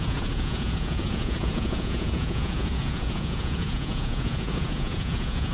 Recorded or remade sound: remade